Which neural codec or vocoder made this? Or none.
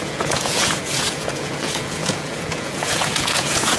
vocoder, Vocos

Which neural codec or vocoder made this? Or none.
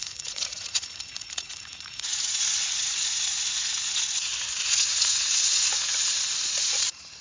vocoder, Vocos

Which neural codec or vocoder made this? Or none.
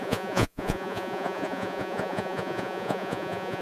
vocoder, Vocos